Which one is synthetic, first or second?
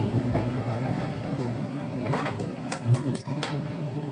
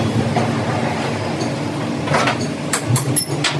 first